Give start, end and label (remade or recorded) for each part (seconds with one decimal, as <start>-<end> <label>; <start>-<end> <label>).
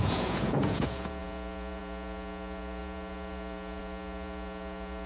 0.0-5.1 remade